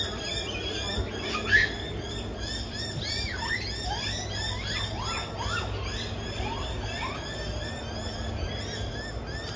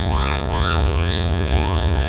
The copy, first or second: second